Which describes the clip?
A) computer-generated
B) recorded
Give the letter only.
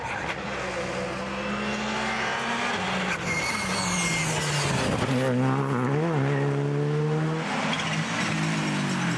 B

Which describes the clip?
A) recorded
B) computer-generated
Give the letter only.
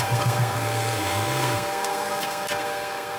B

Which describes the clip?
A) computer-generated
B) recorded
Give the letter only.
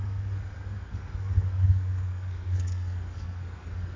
A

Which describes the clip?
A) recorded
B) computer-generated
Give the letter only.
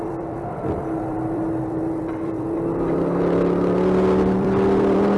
B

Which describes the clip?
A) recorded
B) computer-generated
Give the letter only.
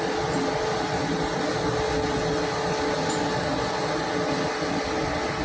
A